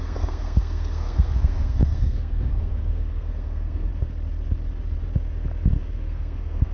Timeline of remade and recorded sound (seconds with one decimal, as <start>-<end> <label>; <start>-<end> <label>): 0.0-3.9 remade; 3.9-5.7 recorded; 5.7-6.7 remade